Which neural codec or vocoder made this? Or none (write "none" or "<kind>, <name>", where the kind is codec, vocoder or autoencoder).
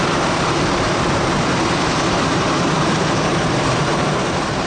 vocoder, BigVGAN v2